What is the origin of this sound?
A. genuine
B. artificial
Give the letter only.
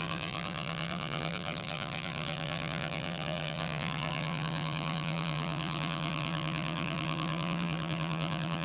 B